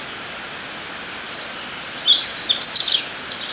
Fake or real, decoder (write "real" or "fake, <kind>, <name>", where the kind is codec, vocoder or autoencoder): real